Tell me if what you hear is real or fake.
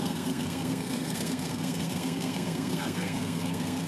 fake